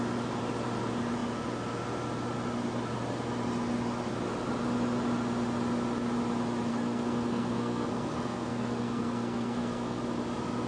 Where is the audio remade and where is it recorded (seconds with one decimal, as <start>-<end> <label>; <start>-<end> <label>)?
0.0-6.7 recorded; 6.7-10.0 remade; 10.0-10.7 recorded